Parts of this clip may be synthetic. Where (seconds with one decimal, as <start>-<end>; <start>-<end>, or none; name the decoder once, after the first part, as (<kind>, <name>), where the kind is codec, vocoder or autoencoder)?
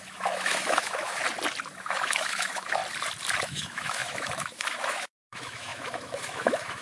0.0-1.2 (autoencoder, DAC-VAE); 1.7-2.8; 3.4-6.8